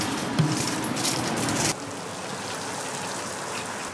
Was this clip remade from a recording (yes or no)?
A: no